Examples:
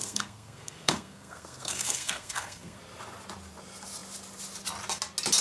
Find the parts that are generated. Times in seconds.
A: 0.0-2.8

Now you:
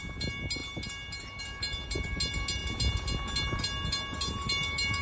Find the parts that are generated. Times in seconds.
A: none